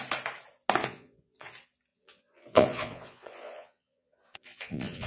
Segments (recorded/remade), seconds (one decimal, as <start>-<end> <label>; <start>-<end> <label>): 0.0-0.8 recorded; 0.8-1.5 remade; 1.5-1.9 recorded; 1.9-5.1 remade